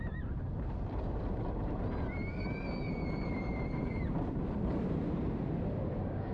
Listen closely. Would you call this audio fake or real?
fake